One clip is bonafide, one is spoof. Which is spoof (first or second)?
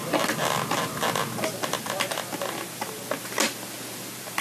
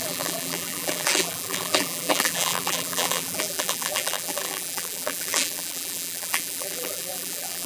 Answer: second